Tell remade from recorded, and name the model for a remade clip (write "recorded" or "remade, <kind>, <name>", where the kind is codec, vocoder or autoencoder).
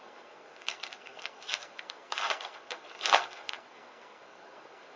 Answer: remade, codec, SNAC